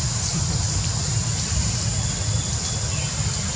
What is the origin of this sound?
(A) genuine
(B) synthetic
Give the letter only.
A